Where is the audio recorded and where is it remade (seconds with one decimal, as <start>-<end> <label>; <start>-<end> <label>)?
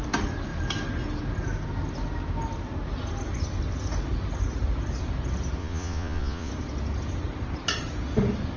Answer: 0.0-5.6 recorded; 5.6-6.5 remade; 6.5-8.6 recorded